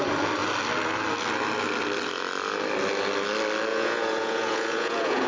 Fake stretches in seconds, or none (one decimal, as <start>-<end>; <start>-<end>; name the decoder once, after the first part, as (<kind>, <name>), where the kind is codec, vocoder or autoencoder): 3.7-5.3 (vocoder, Vocos)